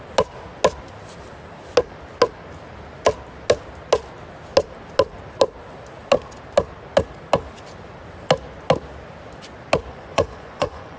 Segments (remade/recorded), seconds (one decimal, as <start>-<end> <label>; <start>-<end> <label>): 0.0-9.9 recorded; 9.9-11.0 remade